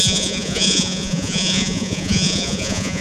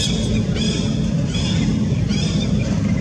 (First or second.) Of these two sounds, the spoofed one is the first